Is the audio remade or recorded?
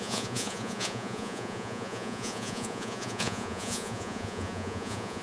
remade